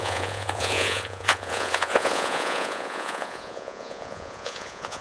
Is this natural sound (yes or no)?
no